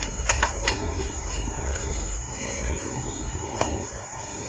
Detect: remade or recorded remade